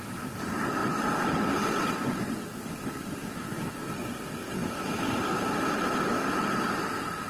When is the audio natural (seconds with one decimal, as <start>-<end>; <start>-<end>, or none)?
0.0-3.2; 3.9-7.3